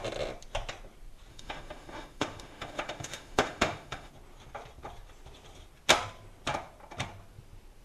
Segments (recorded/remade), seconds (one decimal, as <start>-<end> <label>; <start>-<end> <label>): 0.0-1.3 recorded; 1.3-4.1 remade; 4.1-7.8 recorded